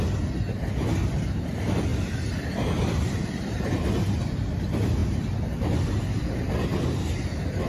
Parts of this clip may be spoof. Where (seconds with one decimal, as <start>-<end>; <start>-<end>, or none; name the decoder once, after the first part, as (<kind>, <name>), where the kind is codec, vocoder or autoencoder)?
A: none